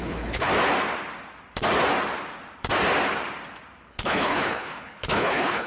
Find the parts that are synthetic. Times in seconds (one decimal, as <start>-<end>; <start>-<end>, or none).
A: 0.0-0.5; 3.9-5.7